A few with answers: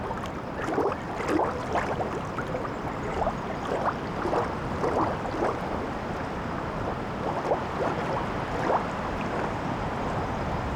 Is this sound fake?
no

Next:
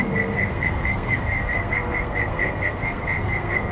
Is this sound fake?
yes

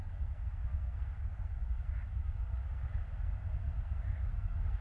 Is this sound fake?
yes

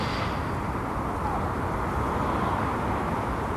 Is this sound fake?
no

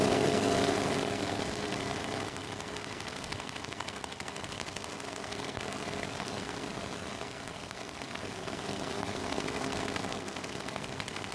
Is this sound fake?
yes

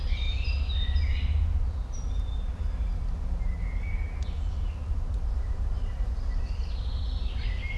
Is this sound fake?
no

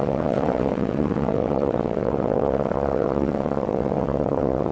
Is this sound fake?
yes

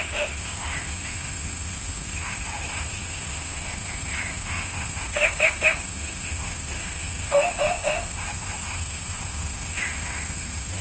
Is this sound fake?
yes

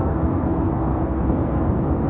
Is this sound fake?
yes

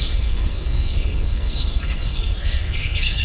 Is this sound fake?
yes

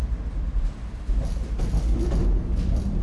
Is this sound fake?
no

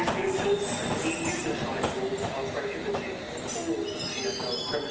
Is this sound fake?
no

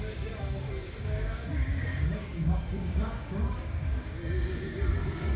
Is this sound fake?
yes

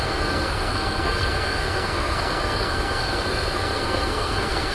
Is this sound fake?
yes